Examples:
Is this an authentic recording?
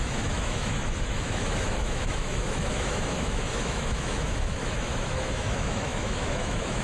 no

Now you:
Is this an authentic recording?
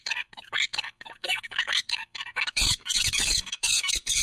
no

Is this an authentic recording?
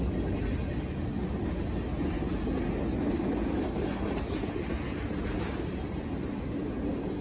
yes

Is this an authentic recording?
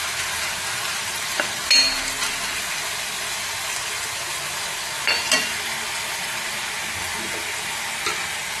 yes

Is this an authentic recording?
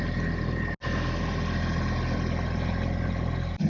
yes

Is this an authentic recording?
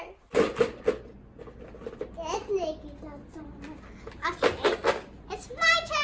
yes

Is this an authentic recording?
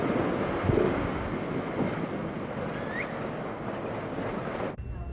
yes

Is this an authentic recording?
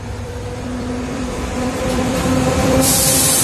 no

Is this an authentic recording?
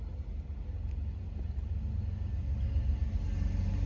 yes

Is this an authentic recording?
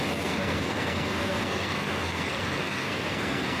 no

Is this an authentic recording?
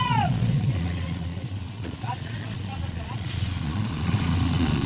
no